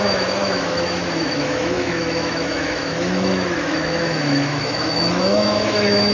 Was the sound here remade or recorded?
remade